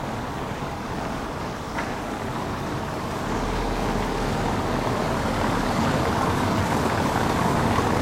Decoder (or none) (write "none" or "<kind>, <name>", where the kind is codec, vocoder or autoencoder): codec, DAC